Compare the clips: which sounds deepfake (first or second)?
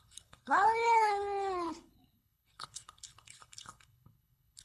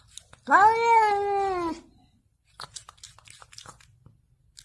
first